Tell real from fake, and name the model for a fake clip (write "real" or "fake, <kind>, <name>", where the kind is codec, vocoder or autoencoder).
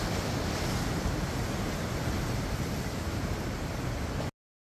real